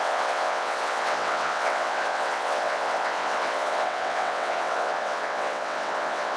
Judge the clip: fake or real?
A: fake